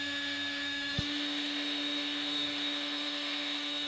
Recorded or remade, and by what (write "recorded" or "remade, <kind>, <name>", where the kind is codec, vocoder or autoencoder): remade, autoencoder, DAC-VAE